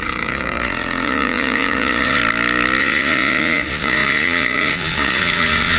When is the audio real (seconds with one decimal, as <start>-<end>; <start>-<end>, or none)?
2.2-2.8